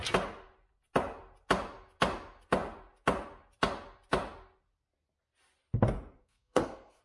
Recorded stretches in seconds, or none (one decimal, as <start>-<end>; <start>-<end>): 0.0-6.2